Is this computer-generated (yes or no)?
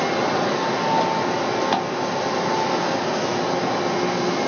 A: no